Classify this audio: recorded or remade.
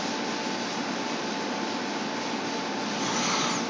recorded